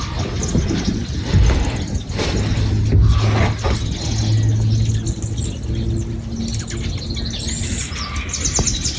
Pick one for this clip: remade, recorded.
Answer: recorded